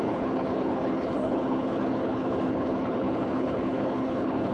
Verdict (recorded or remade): remade